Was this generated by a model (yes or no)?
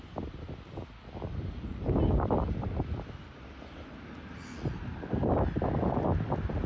no